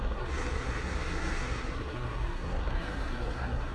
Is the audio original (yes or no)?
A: no